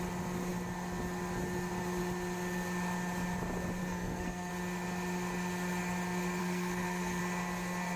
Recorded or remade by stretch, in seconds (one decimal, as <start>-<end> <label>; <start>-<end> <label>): 0.0-3.8 recorded; 3.8-4.5 remade; 4.5-6.4 recorded; 6.4-7.2 remade; 7.2-8.0 recorded

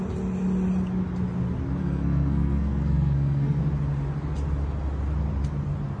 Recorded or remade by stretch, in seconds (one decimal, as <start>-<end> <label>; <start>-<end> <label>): 0.0-1.8 recorded; 1.8-3.6 remade; 3.6-6.0 recorded